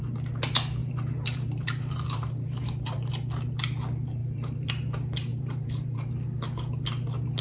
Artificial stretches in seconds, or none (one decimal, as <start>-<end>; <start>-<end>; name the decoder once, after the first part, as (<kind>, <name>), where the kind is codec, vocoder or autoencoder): 0.8-3.1 (vocoder, BigVGAN v2); 4.2-4.7; 5.3-6.1